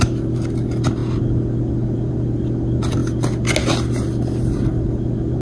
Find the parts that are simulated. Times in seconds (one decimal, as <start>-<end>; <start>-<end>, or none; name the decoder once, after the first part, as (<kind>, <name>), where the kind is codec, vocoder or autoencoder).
none